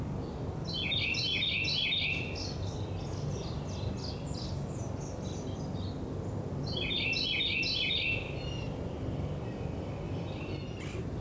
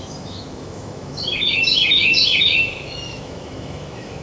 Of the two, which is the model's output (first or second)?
second